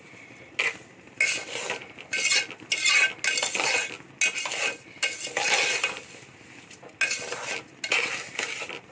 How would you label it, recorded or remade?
recorded